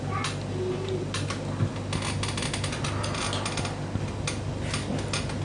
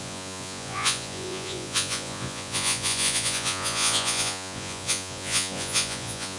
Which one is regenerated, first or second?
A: second